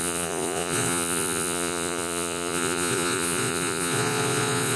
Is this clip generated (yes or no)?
yes